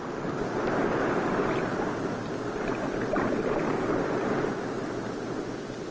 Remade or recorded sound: recorded